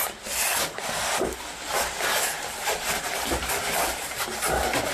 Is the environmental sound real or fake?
real